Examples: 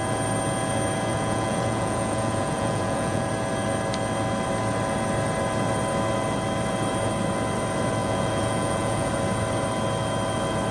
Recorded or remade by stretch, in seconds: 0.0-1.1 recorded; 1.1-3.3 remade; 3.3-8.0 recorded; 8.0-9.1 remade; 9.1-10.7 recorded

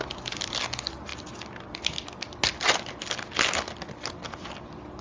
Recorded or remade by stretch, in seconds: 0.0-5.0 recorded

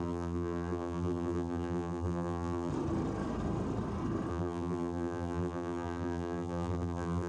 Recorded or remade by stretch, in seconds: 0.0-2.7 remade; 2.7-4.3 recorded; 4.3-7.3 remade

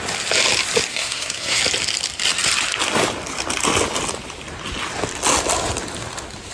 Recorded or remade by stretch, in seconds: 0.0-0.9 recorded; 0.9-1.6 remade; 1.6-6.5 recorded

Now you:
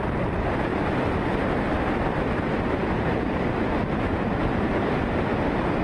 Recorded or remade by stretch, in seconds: 0.0-0.7 recorded; 0.7-2.2 remade; 2.2-4.4 recorded; 4.4-5.1 remade; 5.1-5.8 recorded